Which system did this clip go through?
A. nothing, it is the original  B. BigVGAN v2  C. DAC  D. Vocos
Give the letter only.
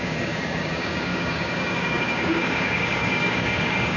C